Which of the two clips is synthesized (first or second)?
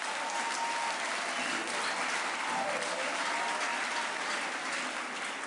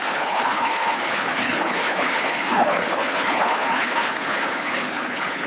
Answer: second